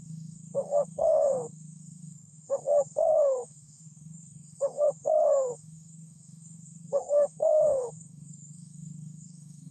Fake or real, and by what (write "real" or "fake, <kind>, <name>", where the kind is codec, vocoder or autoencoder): fake, codec, DAC